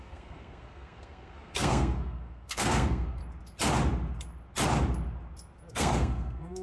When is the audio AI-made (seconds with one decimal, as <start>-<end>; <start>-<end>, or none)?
0.0-3.2; 5.7-6.6

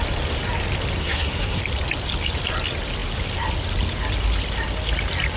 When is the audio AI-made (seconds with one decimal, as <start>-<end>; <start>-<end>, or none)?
1.0-1.6

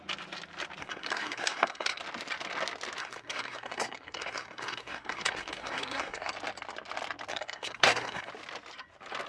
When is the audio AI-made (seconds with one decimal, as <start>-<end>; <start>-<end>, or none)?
0.8-2.0; 3.0-6.3; 7.3-8.3

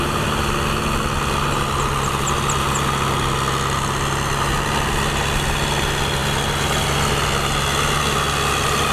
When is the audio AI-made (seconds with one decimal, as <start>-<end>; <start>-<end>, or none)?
none

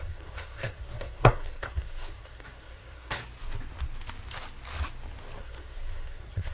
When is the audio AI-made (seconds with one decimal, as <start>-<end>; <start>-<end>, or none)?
0.0-3.2; 5.4-6.5

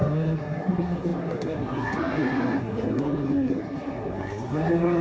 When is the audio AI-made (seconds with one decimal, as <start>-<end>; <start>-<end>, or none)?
0.0-5.0

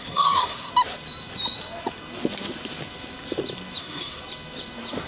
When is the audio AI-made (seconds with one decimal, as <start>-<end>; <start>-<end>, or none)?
0.0-0.7; 3.8-4.2

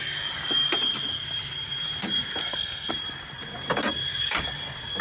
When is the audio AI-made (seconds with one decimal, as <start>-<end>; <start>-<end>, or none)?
2.4-2.9